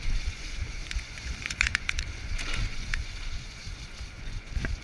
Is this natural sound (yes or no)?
no